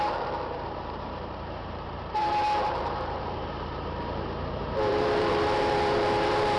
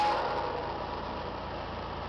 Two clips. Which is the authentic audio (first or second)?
second